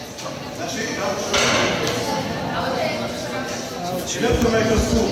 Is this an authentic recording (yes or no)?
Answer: yes